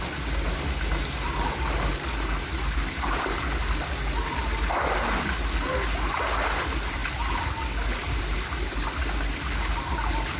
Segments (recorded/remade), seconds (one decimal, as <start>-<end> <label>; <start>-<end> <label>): 0.0-10.4 recorded